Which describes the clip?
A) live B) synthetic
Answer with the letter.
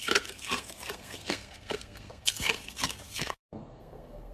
B